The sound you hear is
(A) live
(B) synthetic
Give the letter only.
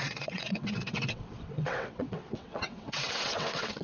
B